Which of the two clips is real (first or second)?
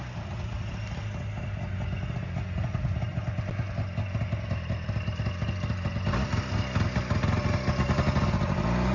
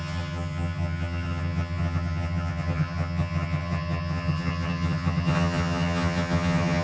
first